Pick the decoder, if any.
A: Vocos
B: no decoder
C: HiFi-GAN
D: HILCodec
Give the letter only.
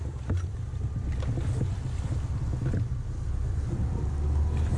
B